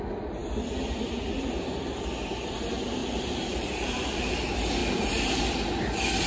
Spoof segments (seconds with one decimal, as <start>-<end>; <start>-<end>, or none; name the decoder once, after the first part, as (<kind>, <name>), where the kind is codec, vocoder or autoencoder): 3.0-4.3 (vocoder, BigVGAN v2); 4.8-5.4